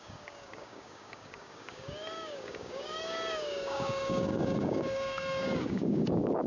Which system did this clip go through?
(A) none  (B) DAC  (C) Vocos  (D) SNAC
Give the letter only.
B